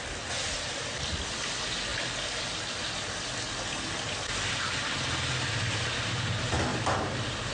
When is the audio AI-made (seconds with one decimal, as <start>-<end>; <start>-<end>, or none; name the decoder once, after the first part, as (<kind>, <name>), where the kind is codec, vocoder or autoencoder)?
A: none